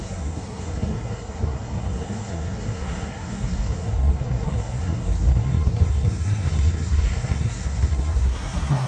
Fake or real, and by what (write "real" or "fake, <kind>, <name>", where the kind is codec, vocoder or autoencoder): fake, codec, SNAC